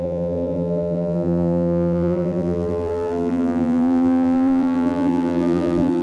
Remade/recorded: remade